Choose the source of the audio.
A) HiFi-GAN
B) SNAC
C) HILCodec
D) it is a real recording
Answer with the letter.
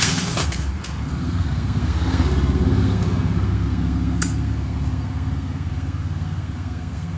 B